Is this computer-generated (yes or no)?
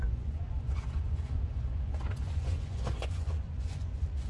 yes